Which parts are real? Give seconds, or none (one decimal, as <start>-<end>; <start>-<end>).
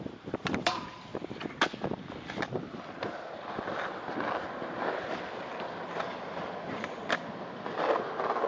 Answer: 1.1-6.2; 7.0-8.5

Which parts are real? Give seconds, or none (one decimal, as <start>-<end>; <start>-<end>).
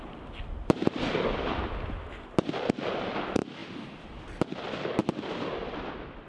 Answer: 0.0-0.8; 1.6-3.6; 4.4-6.3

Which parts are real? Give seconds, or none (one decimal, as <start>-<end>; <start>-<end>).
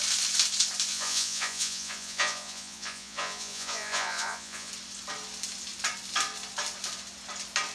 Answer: 0.0-0.9; 4.7-7.7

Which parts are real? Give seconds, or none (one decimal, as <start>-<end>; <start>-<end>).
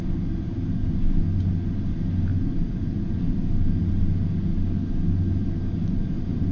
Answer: 0.0-6.5